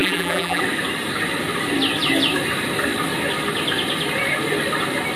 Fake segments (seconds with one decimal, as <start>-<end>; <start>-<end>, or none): 0.0-0.6